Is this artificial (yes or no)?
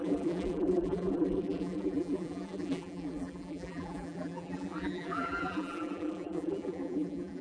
yes